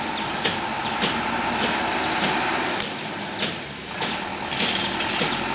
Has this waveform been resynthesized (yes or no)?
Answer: yes